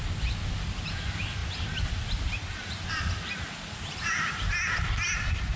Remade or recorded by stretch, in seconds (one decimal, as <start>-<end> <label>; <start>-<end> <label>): 0.0-5.6 recorded